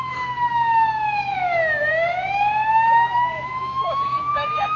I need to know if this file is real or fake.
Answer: fake